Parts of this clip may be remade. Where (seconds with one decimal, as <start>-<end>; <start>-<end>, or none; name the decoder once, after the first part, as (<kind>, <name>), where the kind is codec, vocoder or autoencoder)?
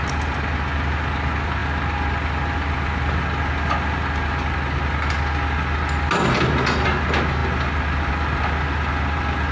none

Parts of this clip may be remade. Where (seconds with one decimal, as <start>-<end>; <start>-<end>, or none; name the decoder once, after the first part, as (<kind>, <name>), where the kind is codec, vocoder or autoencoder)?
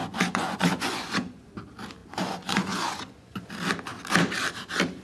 0.0-1.5 (vocoder, Vocos); 2.0-3.5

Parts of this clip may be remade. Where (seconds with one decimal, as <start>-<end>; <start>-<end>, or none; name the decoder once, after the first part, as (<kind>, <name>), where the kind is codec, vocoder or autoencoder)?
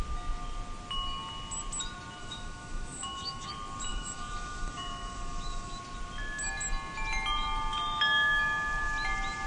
2.2-3.5 (autoencoder, DAC-VAE); 3.9-5.8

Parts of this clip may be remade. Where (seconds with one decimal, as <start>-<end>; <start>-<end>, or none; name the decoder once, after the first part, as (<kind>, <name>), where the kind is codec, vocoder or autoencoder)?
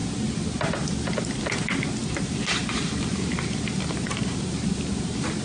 none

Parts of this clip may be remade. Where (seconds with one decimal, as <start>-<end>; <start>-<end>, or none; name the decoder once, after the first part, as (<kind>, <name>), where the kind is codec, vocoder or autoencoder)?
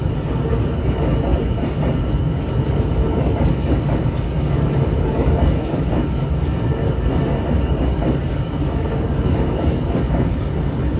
0.0-11.0 (codec, DAC)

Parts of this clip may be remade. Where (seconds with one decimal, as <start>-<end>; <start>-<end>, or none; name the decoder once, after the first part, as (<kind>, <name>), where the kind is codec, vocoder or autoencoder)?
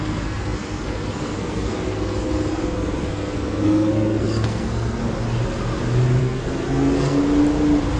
0.0-5.0 (codec, SNAC); 6.2-7.2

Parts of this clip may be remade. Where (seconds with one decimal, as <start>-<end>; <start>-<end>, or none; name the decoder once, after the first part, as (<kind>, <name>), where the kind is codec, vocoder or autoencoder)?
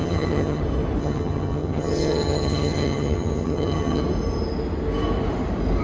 0.0-0.6 (vocoder, HiFi-GAN); 1.0-4.0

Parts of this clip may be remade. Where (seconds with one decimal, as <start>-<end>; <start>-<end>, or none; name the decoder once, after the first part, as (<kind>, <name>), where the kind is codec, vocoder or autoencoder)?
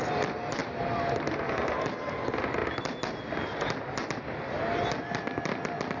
none